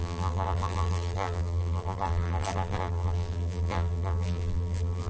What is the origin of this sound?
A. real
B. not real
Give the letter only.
B